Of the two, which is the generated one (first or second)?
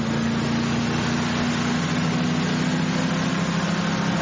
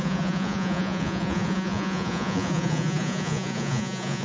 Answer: second